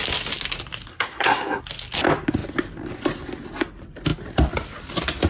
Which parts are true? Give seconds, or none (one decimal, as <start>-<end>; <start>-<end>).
0.0-0.9; 1.6-5.3